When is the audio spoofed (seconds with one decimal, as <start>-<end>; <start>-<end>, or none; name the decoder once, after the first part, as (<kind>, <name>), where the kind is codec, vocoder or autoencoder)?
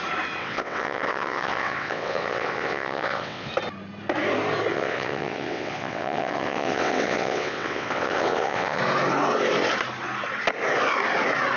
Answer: 0.4-3.5 (vocoder, WaveNeXt); 4.7-8.8